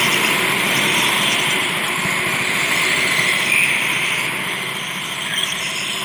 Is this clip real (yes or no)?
yes